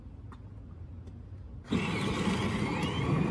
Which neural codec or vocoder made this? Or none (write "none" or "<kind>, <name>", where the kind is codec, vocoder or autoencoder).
none